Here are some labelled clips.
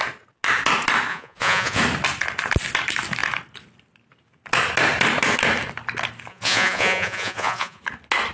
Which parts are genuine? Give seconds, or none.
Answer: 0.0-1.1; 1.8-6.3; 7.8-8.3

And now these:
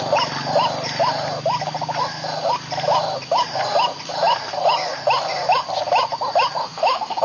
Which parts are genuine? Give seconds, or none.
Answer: 0.0-6.6